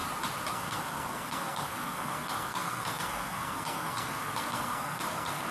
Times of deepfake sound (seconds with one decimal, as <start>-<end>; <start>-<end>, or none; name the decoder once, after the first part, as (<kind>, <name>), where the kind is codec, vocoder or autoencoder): 0.5-5.5 (codec, SNAC)